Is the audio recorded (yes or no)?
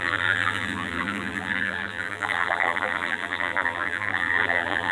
no